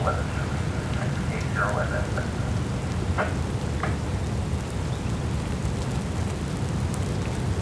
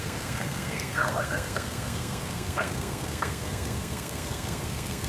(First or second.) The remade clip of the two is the second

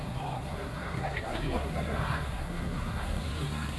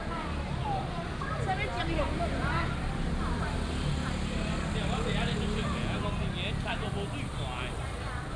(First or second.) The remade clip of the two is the first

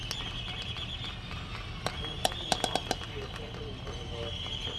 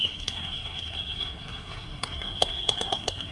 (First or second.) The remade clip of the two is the second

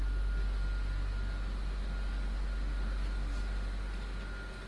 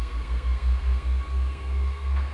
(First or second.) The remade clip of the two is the second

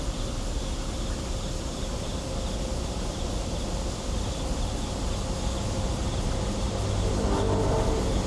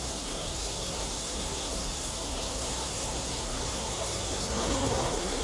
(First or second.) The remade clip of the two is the second